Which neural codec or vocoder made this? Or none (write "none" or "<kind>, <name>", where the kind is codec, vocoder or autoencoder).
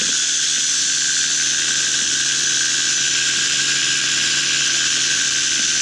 none